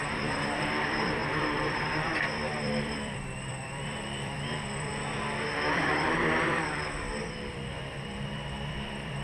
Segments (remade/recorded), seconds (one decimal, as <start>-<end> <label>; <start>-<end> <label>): 0.0-4.9 remade; 4.9-5.7 recorded; 5.7-9.2 remade